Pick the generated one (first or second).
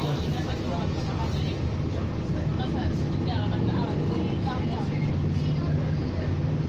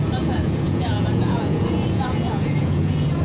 second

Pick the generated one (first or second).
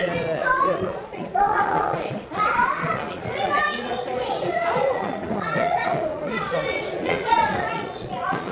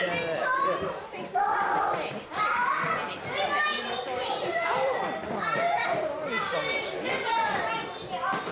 first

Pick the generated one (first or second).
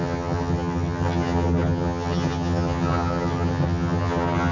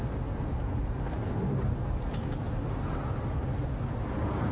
first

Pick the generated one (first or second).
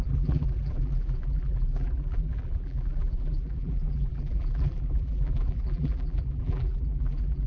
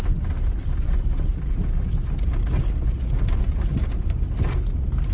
first